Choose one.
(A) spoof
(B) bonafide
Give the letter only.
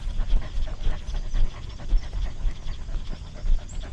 B